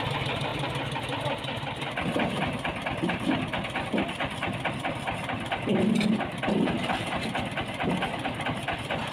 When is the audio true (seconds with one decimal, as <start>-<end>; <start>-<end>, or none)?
0.0-9.1